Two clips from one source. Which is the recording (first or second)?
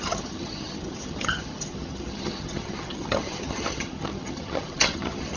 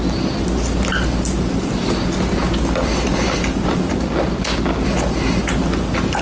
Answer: second